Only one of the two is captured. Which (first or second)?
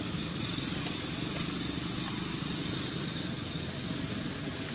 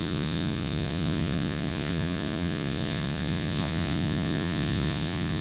first